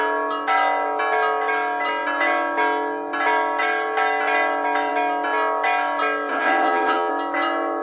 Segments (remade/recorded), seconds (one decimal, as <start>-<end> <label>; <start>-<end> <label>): 0.0-6.3 recorded; 6.3-7.1 remade; 7.1-7.8 recorded